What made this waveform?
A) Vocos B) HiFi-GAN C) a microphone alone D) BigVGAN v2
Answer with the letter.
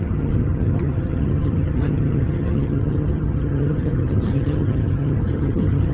B